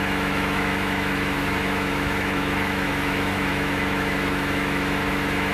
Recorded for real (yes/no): no